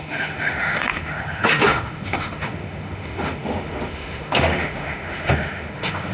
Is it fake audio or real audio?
fake